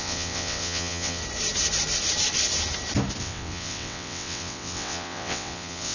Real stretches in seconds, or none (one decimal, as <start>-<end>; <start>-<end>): 1.2-3.2